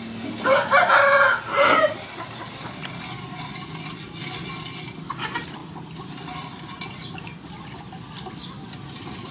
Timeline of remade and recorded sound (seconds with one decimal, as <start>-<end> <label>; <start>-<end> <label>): 0.0-9.3 recorded